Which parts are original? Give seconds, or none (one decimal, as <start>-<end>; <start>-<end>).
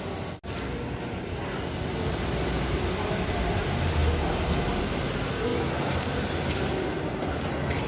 0.0-7.9